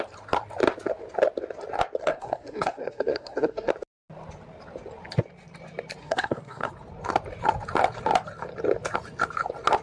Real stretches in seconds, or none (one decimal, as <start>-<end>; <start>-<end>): 0.0-2.0; 3.7-6.0; 6.7-9.8